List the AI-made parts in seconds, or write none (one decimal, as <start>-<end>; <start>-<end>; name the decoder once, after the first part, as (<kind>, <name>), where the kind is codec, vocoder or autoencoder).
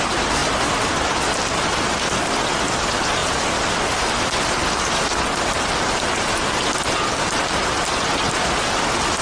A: none